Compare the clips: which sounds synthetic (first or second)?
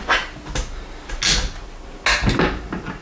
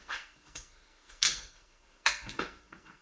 second